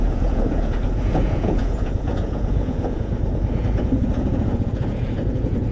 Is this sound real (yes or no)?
no